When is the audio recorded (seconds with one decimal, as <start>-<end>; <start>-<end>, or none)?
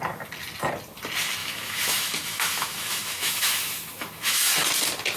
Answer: 0.0-1.4; 4.5-5.2